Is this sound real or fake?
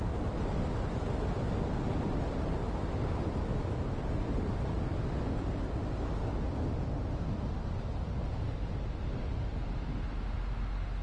real